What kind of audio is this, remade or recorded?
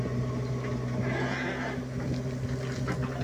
recorded